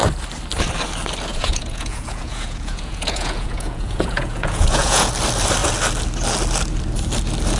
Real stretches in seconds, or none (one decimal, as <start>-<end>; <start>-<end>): 0.0-1.3; 5.1-7.6